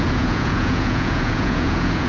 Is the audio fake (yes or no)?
yes